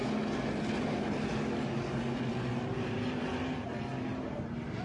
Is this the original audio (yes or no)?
yes